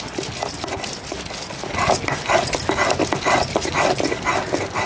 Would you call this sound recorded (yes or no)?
yes